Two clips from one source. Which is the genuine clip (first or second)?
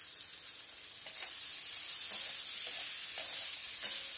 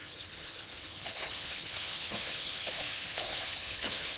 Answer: first